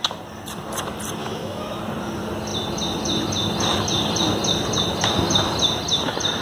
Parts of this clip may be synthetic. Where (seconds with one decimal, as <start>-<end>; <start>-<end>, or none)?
1.2-1.8